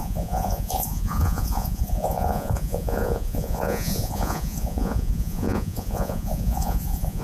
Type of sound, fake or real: fake